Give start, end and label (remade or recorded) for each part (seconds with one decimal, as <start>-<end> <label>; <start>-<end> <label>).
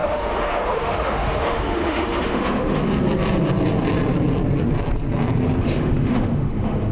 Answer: 0.0-2.8 remade; 2.8-5.6 recorded; 5.6-6.9 remade